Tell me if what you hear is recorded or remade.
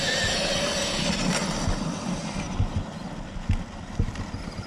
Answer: recorded